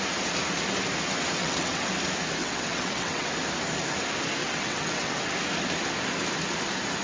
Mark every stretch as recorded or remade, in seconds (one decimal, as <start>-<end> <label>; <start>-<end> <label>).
0.0-1.4 recorded; 1.4-1.9 remade; 1.9-2.4 recorded; 2.4-3.3 remade; 3.3-4.4 recorded; 4.4-5.2 remade; 5.2-7.0 recorded